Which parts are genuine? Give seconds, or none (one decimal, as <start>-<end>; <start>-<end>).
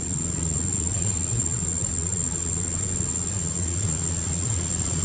none